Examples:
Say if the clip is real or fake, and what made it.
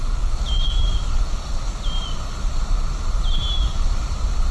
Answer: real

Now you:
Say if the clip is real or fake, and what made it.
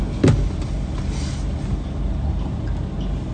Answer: real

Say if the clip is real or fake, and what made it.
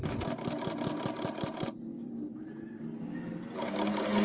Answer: real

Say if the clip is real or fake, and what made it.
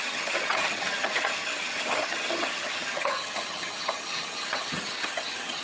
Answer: fake, vocoder, HiFi-GAN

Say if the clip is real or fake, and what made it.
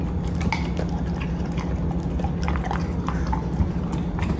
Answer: real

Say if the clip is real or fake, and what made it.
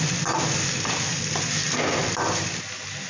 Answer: real